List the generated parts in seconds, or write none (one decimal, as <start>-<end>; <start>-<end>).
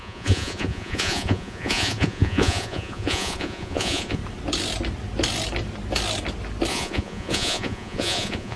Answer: 0.0-4.2; 6.7-8.6